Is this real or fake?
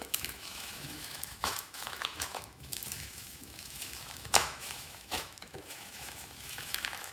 fake